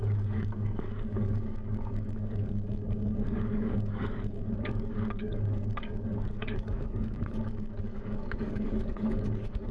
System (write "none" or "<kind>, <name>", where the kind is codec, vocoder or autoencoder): codec, DAC